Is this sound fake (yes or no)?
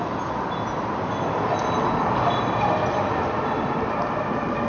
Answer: no